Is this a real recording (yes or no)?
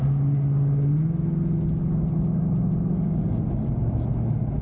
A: yes